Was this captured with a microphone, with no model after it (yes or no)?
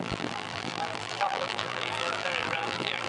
no